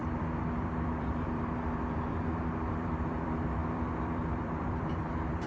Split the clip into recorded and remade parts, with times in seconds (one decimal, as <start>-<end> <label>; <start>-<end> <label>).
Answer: 0.0-5.5 remade